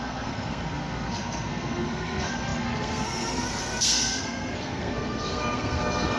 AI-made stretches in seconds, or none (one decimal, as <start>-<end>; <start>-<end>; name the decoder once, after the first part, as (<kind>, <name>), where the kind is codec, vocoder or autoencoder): 0.0-6.2 (codec, SNAC)